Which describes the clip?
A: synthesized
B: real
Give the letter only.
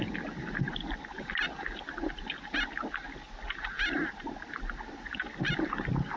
B